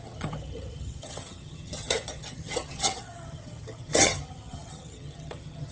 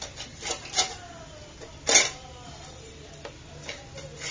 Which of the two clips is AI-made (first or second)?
first